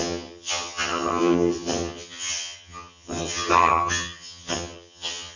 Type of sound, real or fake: fake